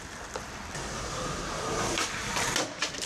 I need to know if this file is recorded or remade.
recorded